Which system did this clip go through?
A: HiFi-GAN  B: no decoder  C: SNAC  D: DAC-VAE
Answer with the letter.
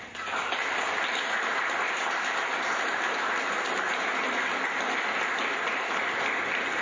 B